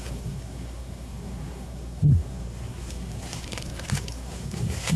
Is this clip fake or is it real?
fake